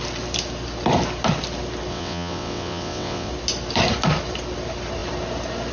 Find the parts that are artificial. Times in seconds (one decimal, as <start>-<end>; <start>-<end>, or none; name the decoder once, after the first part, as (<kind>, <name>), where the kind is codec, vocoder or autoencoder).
1.9-3.3 (vocoder, WaveNeXt)